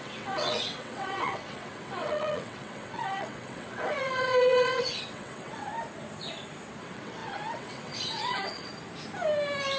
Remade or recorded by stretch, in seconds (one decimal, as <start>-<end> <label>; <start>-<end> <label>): 0.0-5.6 remade; 5.6-6.8 recorded; 6.8-8.7 remade; 8.7-9.8 recorded